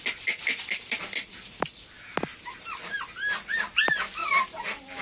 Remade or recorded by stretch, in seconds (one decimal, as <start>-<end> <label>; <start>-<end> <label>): 0.0-5.0 recorded